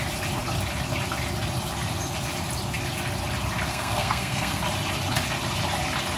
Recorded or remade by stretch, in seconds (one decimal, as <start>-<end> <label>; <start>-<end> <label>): 0.0-3.7 recorded; 3.7-4.6 remade; 4.6-6.2 recorded